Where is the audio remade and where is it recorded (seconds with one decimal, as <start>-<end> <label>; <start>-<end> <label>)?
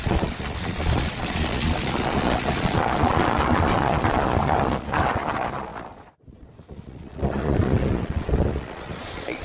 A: 0.0-9.4 remade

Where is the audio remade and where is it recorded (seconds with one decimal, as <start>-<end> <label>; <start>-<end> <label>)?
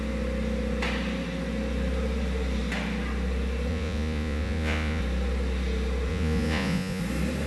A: 0.0-3.7 recorded; 3.7-5.0 remade; 5.0-6.1 recorded; 6.1-7.0 remade; 7.0-7.5 recorded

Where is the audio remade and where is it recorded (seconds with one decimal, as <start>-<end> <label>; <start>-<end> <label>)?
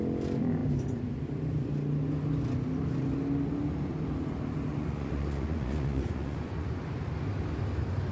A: 0.0-4.7 recorded; 4.7-6.8 remade; 6.8-8.1 recorded